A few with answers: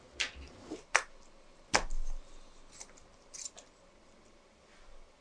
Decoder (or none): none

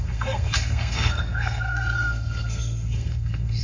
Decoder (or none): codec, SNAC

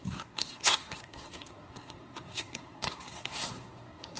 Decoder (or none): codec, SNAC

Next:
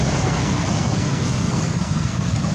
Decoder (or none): codec, SNAC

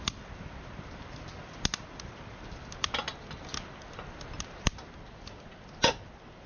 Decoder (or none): none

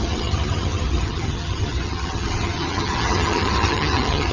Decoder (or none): vocoder, HiFi-GAN